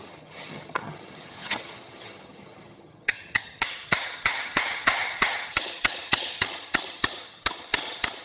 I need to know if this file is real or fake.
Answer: fake